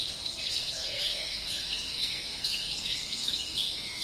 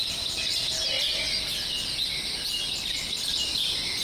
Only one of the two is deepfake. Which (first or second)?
first